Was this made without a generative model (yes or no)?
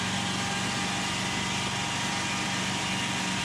yes